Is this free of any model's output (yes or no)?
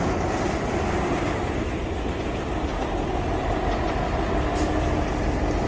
yes